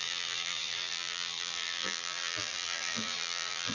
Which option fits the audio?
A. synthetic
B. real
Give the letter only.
A